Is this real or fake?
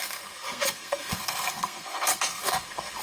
fake